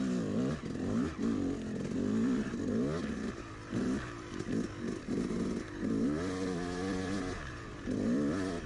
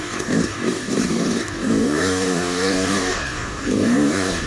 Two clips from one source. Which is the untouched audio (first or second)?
first